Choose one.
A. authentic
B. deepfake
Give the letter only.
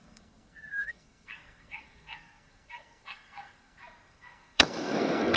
B